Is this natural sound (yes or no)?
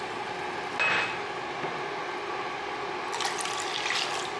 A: yes